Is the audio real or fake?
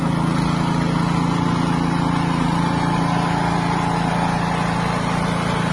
real